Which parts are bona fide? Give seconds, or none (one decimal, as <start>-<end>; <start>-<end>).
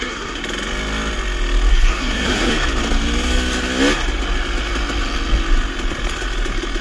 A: 0.4-1.7; 2.5-6.8